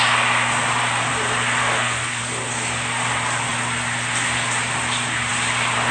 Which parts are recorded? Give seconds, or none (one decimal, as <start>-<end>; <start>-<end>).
0.0-1.6; 2.2-5.9